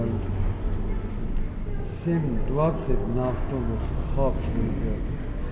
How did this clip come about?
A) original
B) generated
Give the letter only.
A